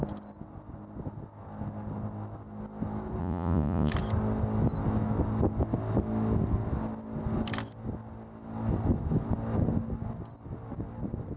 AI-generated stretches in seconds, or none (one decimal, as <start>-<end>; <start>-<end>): 3.2-3.9